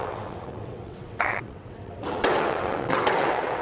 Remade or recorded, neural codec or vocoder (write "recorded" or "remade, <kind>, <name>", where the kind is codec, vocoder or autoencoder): remade, vocoder, WaveNeXt